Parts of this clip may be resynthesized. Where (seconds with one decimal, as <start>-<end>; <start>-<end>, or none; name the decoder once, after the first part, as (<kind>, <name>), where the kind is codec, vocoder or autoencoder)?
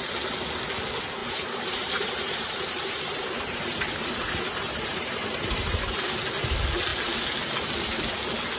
1.2-5.8 (vocoder, BigVGAN v2)